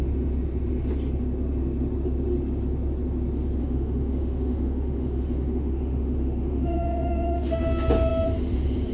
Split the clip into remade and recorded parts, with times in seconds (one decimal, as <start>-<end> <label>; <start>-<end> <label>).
0.0-3.6 recorded; 3.6-7.6 remade; 7.6-8.9 recorded